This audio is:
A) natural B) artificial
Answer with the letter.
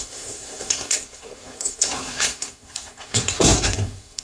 B